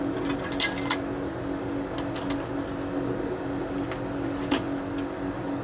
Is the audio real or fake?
real